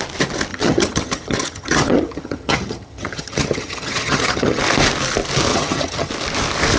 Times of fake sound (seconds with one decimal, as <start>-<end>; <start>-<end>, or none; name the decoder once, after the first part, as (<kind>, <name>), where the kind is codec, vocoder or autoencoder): 0.5-4.6 (vocoder, HiFi-GAN); 5.5-6.1